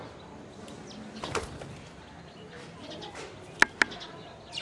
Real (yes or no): yes